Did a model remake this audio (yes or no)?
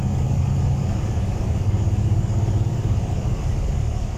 yes